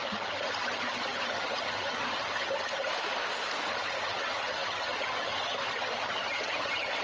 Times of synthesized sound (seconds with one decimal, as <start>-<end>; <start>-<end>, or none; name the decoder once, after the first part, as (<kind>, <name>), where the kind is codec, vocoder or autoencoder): 0.0-2.9 (vocoder, HiFi-GAN); 3.7-7.0